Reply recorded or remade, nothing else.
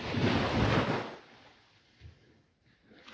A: recorded